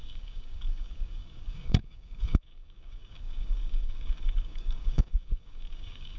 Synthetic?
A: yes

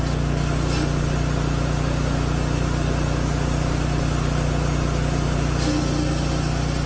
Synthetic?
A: no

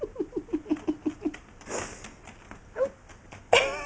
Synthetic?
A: no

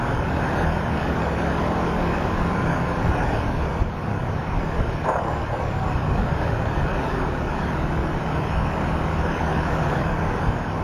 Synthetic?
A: yes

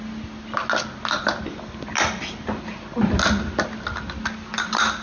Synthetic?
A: no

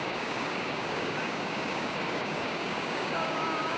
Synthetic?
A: yes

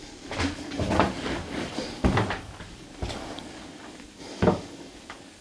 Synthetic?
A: yes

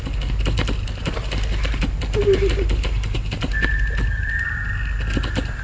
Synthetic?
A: no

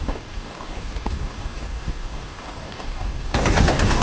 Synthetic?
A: yes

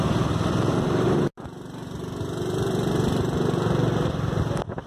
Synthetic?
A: no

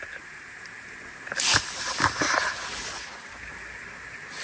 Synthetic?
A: no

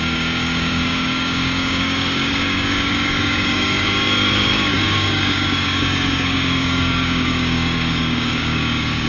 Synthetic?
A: yes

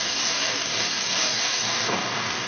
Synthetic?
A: yes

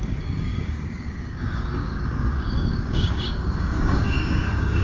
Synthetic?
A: yes